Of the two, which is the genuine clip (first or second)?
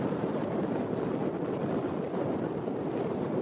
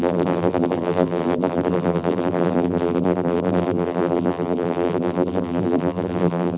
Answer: first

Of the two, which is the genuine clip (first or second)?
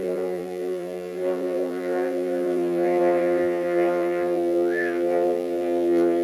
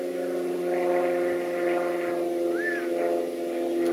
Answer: second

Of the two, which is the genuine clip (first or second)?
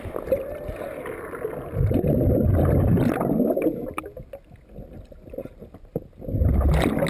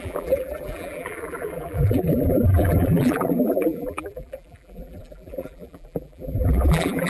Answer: first